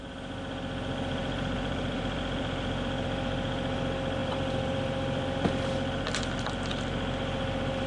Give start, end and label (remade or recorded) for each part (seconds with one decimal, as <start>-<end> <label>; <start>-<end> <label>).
0.0-1.2 recorded; 1.2-2.4 remade; 2.4-4.2 recorded; 4.2-5.5 remade; 5.5-7.9 recorded